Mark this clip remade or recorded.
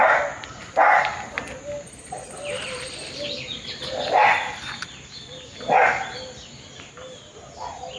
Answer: recorded